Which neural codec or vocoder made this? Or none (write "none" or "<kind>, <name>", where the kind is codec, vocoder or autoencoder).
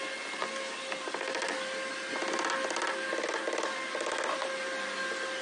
none